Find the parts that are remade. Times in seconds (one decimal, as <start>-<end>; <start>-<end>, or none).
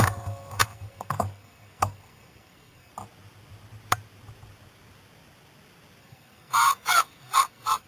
0.0-2.9; 6.0-7.9